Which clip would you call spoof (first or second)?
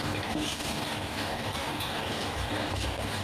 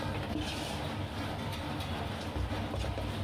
first